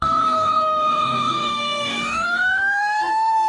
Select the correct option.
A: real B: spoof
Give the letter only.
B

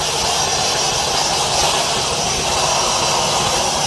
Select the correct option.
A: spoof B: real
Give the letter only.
B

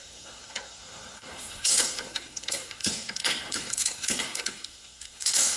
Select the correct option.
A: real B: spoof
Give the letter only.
B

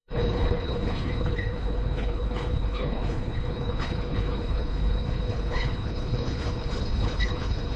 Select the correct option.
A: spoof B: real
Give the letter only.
A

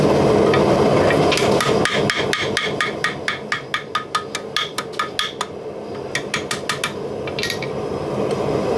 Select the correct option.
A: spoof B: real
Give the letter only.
B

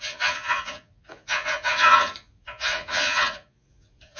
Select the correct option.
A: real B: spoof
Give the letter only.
B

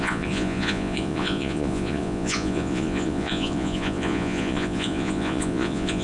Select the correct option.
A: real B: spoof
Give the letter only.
B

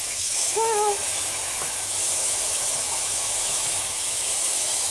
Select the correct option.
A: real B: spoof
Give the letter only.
B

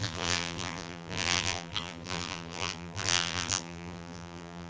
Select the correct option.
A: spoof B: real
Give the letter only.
A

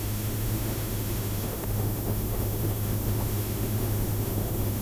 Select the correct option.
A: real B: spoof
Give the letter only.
B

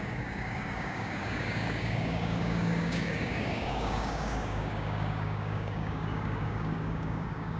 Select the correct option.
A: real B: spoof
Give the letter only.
B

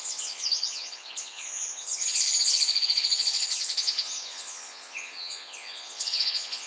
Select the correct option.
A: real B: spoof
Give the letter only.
B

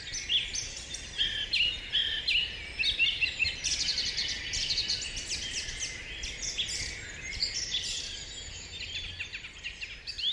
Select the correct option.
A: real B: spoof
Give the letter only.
A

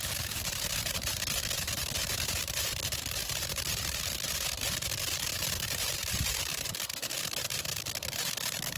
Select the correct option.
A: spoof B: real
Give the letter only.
A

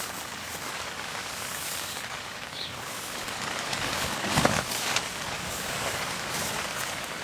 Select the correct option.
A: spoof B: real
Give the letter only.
A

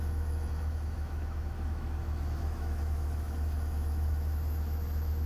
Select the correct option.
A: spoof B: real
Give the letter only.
A